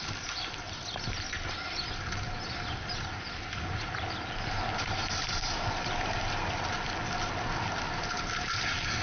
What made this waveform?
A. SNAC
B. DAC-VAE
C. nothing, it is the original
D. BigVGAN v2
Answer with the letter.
C